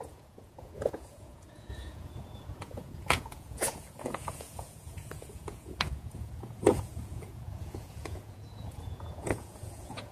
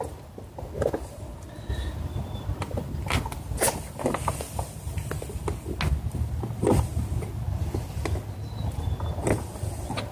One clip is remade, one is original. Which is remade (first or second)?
first